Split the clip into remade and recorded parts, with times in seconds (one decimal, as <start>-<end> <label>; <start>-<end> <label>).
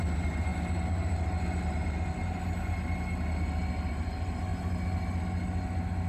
0.0-6.1 recorded